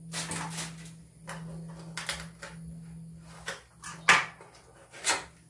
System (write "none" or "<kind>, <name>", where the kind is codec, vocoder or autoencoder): none